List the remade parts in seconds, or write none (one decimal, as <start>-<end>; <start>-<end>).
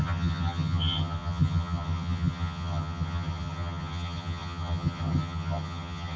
0.0-6.2